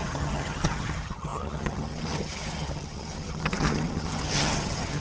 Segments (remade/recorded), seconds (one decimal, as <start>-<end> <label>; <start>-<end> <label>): 0.0-5.0 remade